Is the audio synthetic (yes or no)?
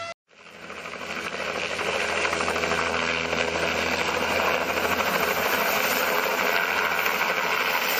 no